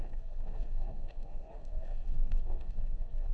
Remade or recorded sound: remade